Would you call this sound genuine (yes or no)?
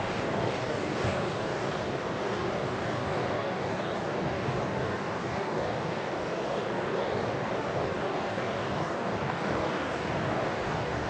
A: no